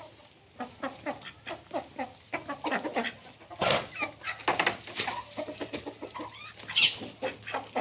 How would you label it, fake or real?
real